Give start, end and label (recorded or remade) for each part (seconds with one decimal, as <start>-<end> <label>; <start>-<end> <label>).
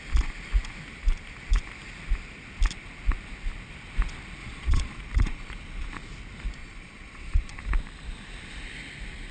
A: 0.0-4.4 recorded; 4.4-5.0 remade; 5.0-6.6 recorded; 6.6-7.6 remade; 7.6-9.3 recorded